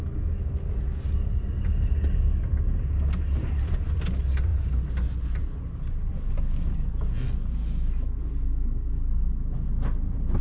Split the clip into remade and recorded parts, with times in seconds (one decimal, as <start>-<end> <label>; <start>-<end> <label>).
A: 0.0-10.4 recorded